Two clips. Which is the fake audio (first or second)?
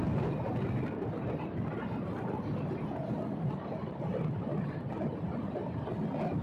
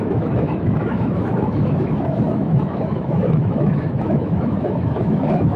second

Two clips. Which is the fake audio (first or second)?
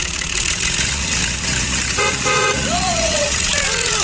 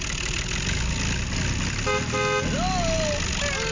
first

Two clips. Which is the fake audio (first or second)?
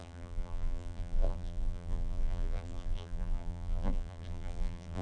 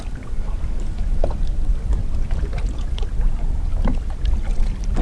first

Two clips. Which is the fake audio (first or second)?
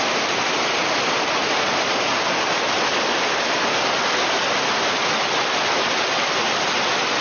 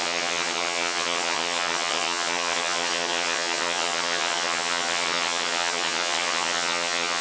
second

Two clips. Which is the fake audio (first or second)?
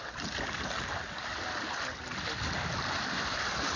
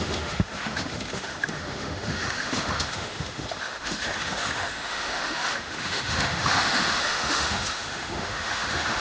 second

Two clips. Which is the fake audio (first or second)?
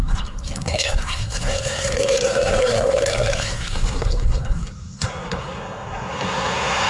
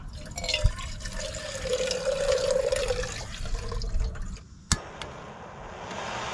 first